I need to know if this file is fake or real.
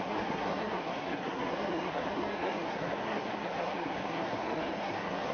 fake